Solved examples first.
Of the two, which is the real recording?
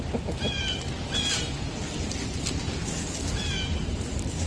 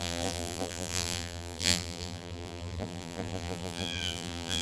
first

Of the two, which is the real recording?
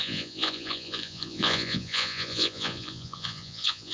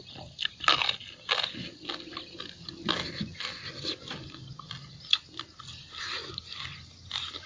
second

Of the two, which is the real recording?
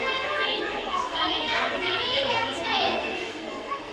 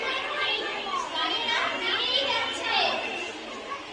second